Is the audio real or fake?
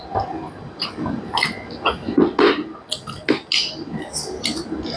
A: real